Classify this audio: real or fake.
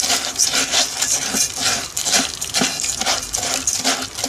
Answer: real